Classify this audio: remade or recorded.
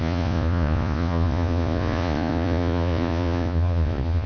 remade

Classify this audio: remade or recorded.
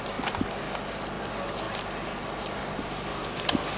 recorded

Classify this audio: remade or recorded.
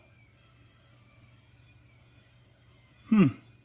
remade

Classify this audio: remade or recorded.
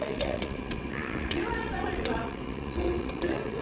remade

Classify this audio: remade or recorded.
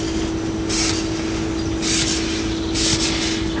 recorded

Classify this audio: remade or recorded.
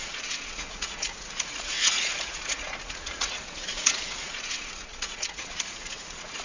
remade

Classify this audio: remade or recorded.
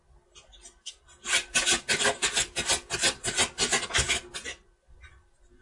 recorded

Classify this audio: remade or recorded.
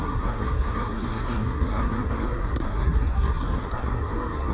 remade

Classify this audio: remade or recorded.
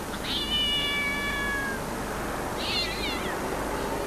recorded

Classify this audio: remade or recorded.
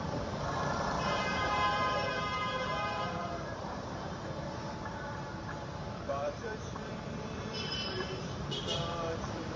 remade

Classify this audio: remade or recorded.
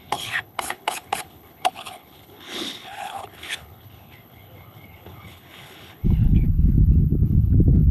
remade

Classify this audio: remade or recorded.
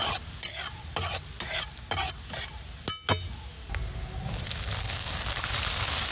recorded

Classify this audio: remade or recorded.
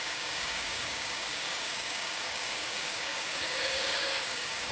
remade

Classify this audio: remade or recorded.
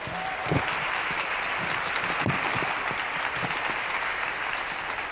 recorded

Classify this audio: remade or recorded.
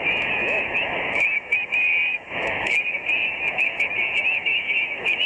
remade